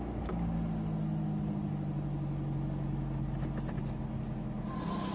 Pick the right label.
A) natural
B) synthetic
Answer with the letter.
A